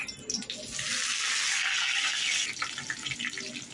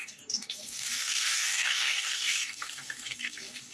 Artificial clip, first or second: second